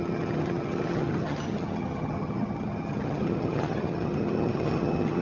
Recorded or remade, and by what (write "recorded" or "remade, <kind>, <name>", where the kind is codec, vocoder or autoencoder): remade, vocoder, HiFi-GAN